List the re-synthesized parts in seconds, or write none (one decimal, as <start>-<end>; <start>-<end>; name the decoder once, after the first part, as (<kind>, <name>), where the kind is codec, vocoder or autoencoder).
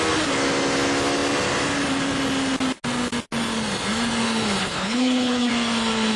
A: 4.6-5.5 (codec, HILCodec)